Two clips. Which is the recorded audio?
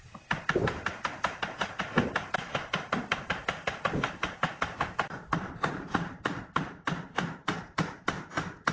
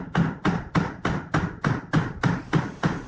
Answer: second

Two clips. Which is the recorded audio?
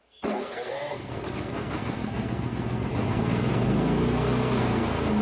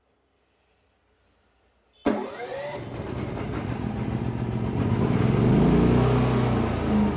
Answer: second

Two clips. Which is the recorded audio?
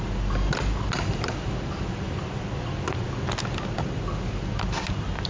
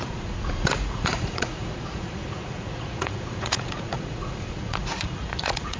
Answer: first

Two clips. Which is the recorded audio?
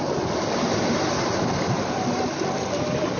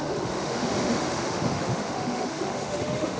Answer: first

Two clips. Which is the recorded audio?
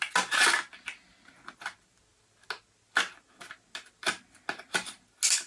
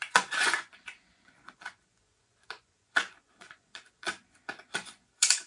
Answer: first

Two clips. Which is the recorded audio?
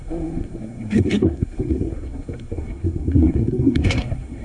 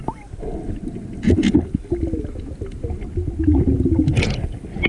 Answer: second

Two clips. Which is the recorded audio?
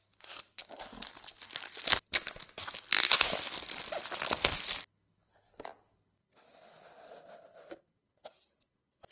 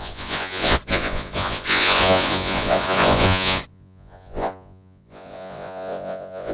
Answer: first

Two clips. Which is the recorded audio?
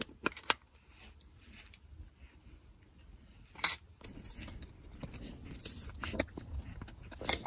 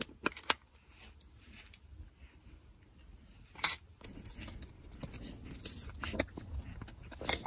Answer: second